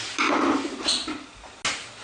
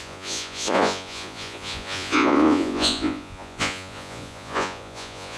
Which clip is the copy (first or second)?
second